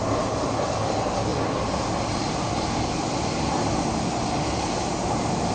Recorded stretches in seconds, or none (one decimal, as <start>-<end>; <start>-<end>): 0.0-5.5